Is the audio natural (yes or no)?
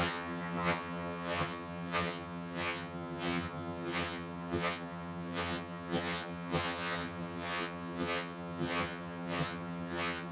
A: no